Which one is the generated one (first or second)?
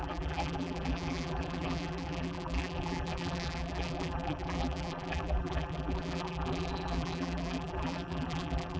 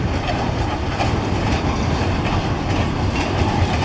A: first